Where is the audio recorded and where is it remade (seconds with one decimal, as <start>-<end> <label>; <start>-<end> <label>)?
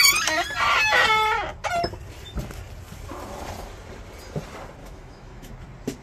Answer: 0.0-4.8 recorded; 4.8-5.5 remade; 5.5-6.0 recorded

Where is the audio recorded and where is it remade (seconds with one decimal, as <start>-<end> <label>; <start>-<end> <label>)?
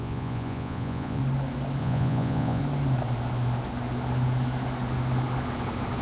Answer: 0.0-1.2 remade; 1.2-1.8 recorded; 1.8-2.6 remade; 2.6-6.0 recorded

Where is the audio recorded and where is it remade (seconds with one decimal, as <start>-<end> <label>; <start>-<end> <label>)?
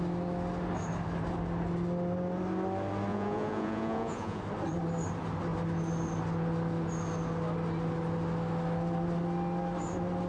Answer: 0.0-3.1 recorded; 3.1-4.4 remade; 4.4-10.3 recorded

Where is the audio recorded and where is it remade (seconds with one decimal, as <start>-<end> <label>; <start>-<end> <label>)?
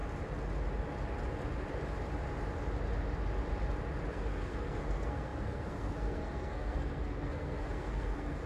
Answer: 0.0-4.1 recorded; 4.1-8.5 remade